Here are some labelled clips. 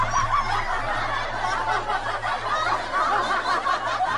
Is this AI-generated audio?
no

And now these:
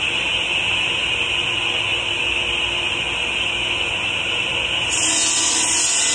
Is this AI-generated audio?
no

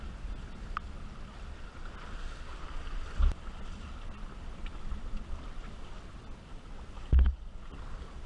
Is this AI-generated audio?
no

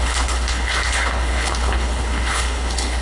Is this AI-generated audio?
yes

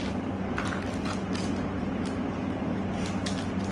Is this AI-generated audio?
no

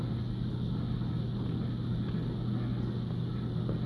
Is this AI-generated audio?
no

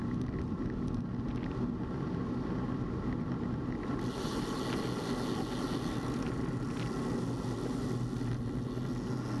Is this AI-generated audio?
no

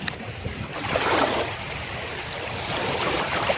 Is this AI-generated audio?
yes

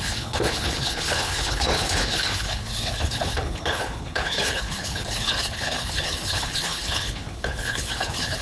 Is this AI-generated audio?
yes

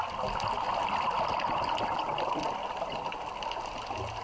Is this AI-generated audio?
no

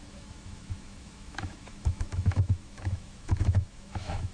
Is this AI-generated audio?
yes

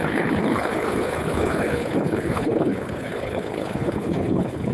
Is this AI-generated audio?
yes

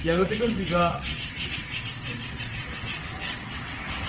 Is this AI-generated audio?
yes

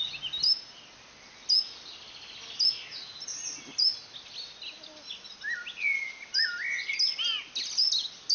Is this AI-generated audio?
no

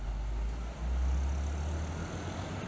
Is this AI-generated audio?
no